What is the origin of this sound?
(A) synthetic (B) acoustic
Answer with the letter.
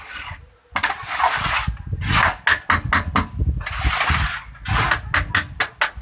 B